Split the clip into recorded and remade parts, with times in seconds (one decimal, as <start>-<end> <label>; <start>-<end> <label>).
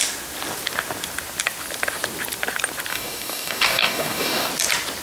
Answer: 0.0-2.9 recorded; 2.9-4.5 remade; 4.5-5.0 recorded